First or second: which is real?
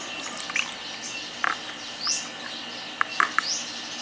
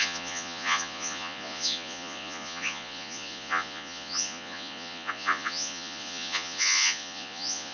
first